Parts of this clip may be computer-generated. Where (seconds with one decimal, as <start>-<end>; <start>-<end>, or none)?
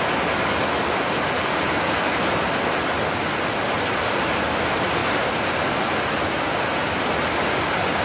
none